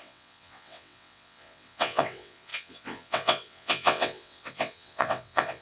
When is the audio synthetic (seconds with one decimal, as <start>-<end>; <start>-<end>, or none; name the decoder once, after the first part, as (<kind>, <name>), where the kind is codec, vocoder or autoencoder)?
0.0-5.6 (vocoder, WaveNeXt)